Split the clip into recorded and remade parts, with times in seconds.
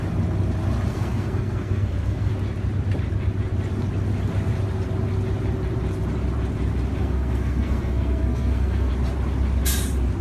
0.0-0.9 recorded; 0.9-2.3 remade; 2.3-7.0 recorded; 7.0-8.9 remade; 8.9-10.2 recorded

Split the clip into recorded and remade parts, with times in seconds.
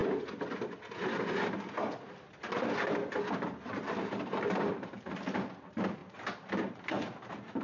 0.0-3.7 recorded; 3.7-7.6 remade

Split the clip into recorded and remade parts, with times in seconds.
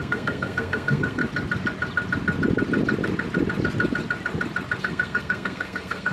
0.0-1.2 remade; 1.2-4.8 recorded; 4.8-6.1 remade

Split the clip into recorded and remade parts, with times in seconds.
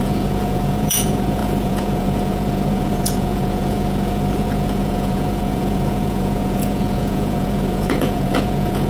0.0-8.9 remade